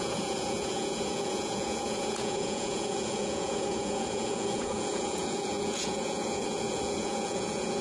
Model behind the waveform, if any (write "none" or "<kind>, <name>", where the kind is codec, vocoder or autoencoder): vocoder, Vocos